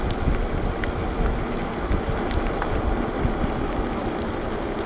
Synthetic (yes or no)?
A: no